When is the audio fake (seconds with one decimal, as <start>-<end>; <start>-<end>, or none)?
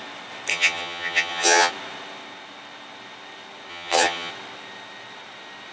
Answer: 0.5-1.7; 3.7-4.3